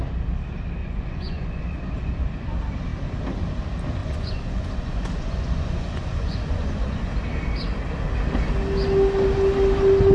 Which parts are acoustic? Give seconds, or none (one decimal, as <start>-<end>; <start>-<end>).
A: 0.0-0.8; 1.6-4.0; 7.1-10.1